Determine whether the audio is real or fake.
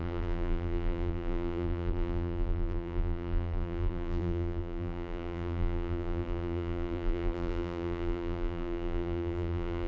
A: fake